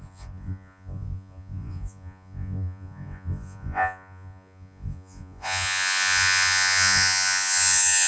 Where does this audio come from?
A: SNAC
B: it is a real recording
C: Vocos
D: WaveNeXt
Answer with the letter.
C